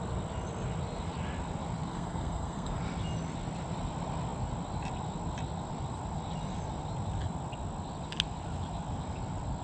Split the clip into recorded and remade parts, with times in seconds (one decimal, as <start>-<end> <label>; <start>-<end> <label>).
0.0-1.9 recorded; 1.9-2.8 remade; 2.8-9.6 recorded